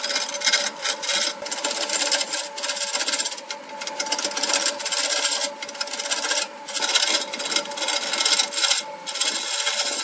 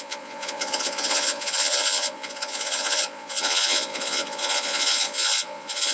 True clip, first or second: first